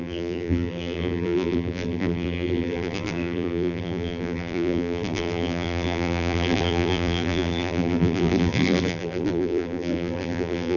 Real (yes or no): no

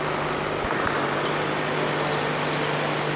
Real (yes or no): yes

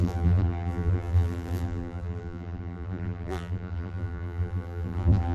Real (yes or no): no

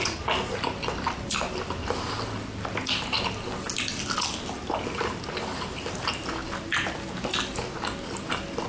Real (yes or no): yes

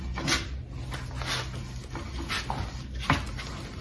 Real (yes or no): yes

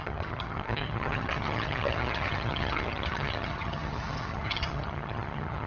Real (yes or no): no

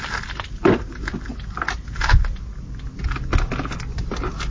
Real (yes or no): yes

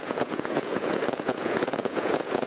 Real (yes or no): no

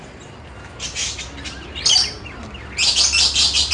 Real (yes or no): yes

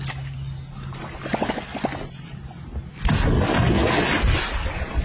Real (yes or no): yes